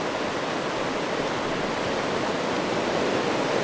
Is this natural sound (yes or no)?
yes